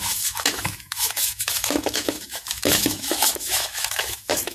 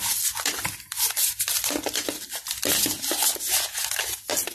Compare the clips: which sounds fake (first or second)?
first